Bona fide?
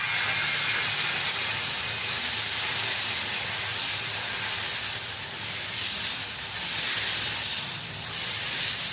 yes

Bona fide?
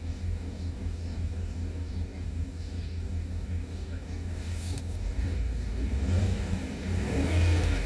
no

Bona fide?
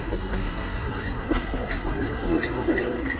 no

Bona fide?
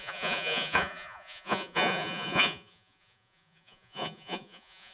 no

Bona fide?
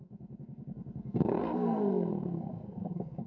no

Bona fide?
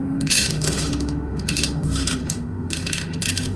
no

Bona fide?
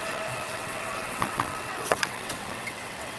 no